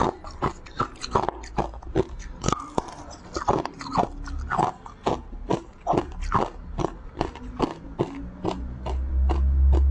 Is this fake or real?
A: real